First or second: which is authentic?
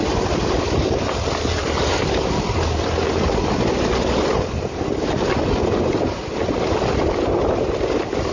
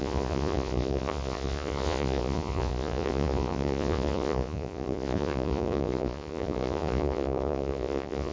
first